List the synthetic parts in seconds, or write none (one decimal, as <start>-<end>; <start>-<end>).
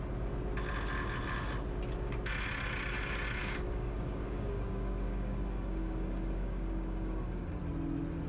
3.4-7.6